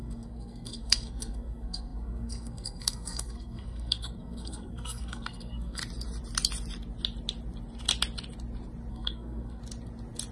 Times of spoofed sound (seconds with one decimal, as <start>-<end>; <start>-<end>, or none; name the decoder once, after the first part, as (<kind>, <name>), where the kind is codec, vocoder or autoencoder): 0.0-5.8 (codec, SNAC); 8.9-9.6